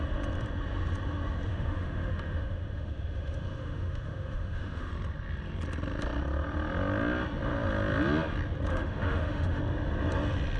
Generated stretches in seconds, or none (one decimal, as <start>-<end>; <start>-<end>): 1.5-4.9; 8.7-9.6